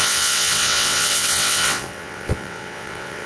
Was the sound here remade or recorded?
remade